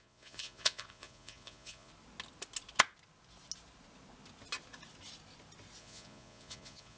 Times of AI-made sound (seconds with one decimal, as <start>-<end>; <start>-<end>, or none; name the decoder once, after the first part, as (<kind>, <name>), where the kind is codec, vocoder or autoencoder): 0.0-1.9 (vocoder, Vocos); 5.8-7.0